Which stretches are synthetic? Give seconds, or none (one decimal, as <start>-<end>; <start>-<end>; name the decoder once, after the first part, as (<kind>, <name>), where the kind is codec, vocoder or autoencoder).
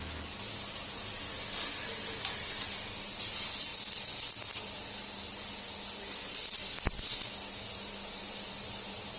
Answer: none